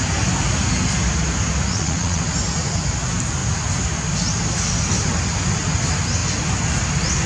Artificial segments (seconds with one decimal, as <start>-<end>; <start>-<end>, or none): 1.7-2.2